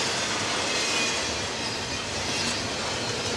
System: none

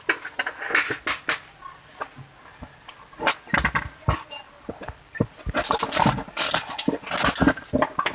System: none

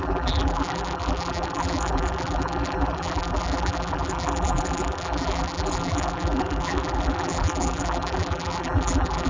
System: vocoder, BigVGAN v2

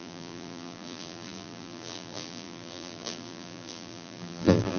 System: vocoder, BigVGAN v2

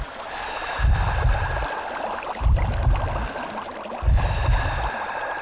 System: none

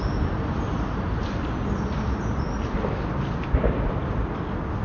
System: none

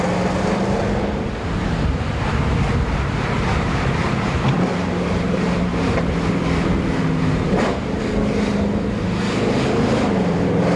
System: none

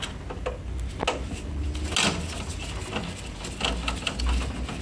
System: none